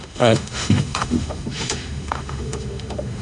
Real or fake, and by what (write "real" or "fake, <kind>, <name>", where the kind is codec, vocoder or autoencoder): fake, autoencoder, DAC-VAE